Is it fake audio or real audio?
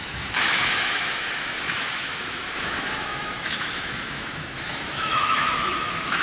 fake